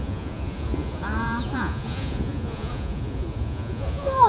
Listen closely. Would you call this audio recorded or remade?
remade